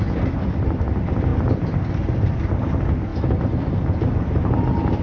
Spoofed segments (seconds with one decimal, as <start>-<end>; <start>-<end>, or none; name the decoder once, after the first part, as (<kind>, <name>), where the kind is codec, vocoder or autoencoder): 1.3-2.5 (vocoder, BigVGAN v2)